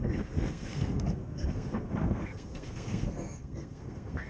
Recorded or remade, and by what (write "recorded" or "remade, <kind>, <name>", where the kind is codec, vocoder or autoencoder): remade, codec, SNAC